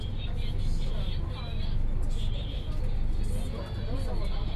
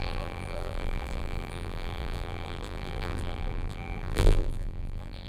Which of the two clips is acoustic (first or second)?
first